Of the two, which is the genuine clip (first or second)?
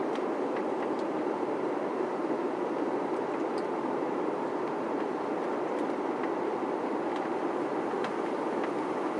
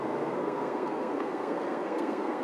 first